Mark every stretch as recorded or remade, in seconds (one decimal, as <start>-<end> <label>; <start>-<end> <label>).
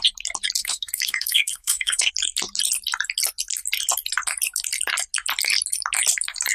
0.0-0.6 recorded; 0.6-2.1 remade; 2.1-6.5 recorded